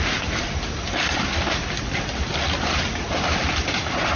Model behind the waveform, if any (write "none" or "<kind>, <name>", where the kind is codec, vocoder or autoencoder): none